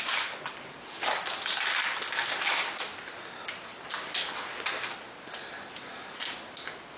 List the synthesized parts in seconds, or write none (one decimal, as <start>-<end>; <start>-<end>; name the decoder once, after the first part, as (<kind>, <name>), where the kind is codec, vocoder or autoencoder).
none